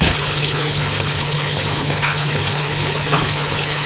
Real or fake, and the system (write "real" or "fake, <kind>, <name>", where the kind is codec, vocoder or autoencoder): fake, codec, HILCodec